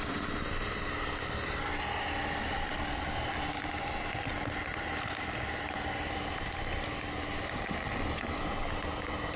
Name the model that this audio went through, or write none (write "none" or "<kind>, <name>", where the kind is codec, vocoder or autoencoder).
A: none